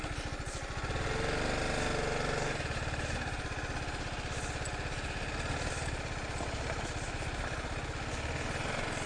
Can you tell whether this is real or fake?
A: real